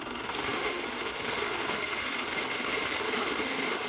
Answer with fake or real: fake